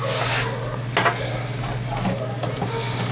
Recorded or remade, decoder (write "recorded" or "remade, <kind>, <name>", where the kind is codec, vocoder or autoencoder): recorded